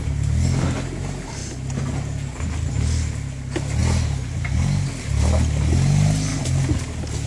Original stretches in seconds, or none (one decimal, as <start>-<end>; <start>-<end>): 0.0-7.3